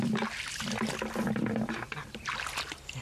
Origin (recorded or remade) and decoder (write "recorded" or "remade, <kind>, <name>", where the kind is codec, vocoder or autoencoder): recorded